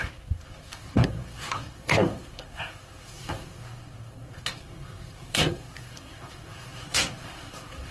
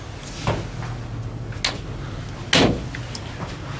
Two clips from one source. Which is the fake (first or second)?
first